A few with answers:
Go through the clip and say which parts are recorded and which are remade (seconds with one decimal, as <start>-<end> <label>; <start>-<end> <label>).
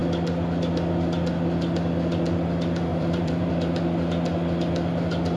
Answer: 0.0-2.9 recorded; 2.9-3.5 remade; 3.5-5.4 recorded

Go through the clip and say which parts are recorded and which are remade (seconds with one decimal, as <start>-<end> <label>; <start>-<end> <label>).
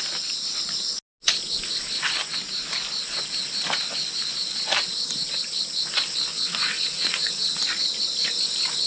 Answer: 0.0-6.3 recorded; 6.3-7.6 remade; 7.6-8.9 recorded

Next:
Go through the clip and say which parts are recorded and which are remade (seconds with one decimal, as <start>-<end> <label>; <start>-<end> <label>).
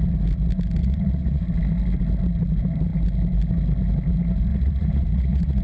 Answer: 0.0-0.8 recorded; 0.8-1.4 remade; 1.4-4.5 recorded; 4.5-5.6 remade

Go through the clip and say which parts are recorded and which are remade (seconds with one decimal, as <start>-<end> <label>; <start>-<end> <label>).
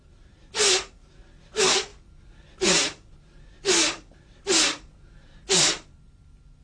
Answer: 0.0-6.6 recorded